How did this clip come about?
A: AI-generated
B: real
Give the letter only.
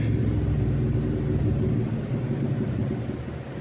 B